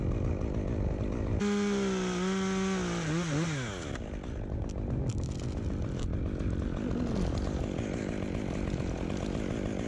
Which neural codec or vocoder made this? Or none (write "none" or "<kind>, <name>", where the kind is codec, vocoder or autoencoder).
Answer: none